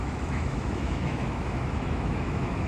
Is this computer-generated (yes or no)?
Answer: yes